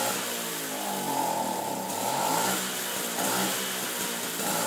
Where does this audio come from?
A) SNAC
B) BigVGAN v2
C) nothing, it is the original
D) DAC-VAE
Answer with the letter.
C